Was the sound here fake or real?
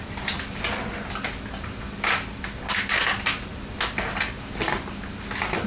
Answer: real